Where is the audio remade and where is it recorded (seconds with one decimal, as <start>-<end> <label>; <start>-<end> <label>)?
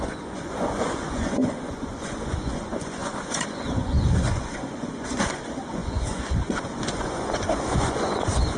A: 0.0-8.6 remade